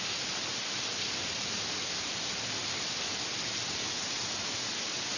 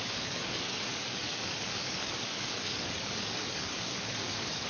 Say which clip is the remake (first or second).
second